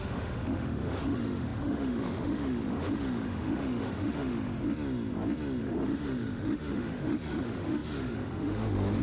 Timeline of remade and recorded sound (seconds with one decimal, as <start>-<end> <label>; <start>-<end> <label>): 0.0-4.5 remade; 4.5-5.6 recorded; 5.6-9.0 remade